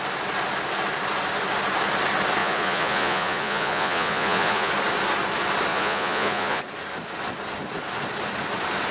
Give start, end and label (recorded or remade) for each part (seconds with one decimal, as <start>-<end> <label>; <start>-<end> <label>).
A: 0.0-2.4 recorded; 2.4-4.7 remade; 4.7-5.7 recorded; 5.7-6.6 remade; 6.6-8.9 recorded